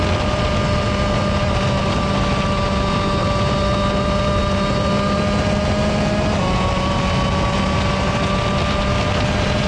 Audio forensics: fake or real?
real